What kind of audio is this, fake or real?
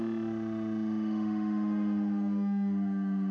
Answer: fake